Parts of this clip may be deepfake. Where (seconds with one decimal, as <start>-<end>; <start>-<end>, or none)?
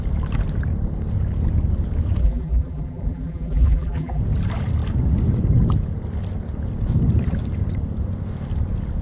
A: 2.2-4.2